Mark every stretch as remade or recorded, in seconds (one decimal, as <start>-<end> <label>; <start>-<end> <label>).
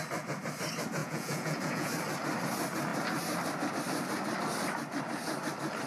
0.0-1.0 recorded; 1.0-1.9 remade; 1.9-5.9 recorded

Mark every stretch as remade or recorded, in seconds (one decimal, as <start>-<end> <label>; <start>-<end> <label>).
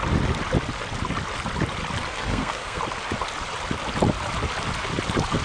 0.0-2.1 recorded; 2.1-2.8 remade; 2.8-5.4 recorded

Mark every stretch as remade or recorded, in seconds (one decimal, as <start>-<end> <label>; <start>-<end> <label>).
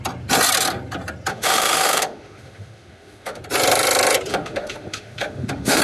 0.0-1.3 recorded; 1.3-3.4 remade; 3.4-4.3 recorded; 4.3-5.8 remade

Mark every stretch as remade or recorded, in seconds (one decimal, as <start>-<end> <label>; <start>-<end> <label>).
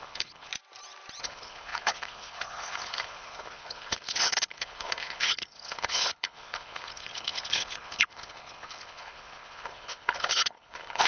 0.0-0.5 remade; 0.5-1.2 recorded; 1.2-11.1 remade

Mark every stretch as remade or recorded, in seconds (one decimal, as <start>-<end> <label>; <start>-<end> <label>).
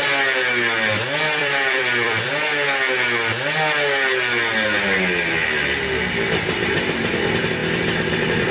0.0-1.4 recorded; 1.4-2.3 remade; 2.3-7.6 recorded; 7.6-8.5 remade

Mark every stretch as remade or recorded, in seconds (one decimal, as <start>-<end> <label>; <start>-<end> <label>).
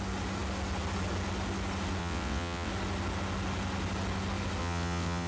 0.0-2.0 recorded; 2.0-2.7 remade; 2.7-4.6 recorded; 4.6-5.3 remade